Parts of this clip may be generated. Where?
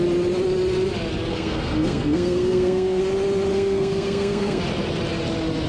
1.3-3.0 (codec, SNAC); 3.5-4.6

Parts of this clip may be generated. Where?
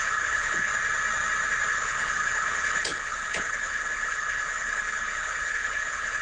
0.0-0.7 (codec, HILCodec); 1.7-6.2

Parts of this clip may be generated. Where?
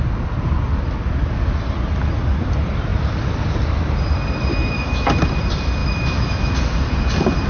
4.5-5.1 (autoencoder, DAC-VAE); 5.8-6.5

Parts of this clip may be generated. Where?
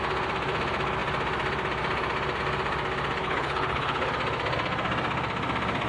3.2-4.1 (codec, HILCodec)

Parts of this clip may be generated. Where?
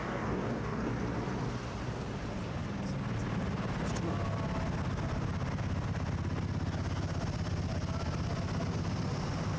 0.0-0.9 (codec, DAC)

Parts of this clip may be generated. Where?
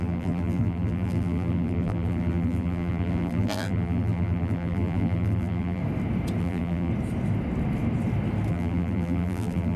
0.0-5.8 (vocoder, BigVGAN v2); 6.4-6.9; 8.5-9.8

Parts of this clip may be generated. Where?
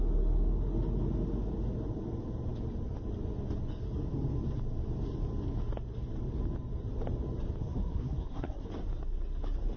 7.6-8.7 (codec, SNAC)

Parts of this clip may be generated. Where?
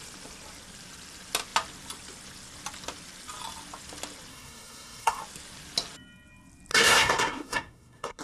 4.3-5.2 (codec, SNAC); 6.7-8.2